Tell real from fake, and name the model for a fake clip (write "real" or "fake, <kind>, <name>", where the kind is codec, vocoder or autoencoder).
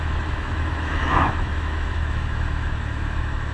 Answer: fake, autoencoder, DAC-VAE